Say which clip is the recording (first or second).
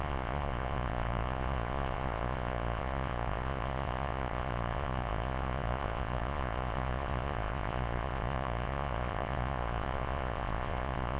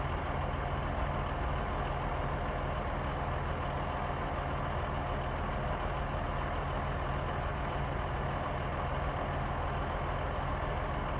second